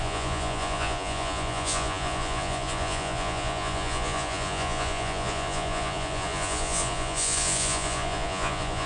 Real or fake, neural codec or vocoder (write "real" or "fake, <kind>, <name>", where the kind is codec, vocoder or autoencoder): fake, vocoder, Vocos